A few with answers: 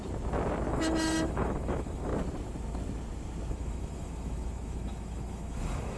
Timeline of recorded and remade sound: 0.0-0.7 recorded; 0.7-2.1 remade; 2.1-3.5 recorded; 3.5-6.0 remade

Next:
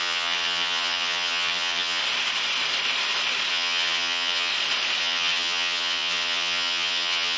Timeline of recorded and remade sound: 0.0-2.0 remade; 2.0-3.5 recorded; 3.5-4.5 remade; 4.5-5.0 recorded; 5.0-7.4 remade